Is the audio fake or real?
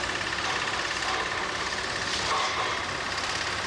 real